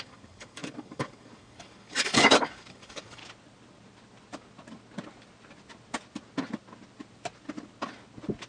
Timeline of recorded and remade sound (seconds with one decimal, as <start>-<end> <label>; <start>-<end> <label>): 0.0-3.2 remade; 3.2-8.5 recorded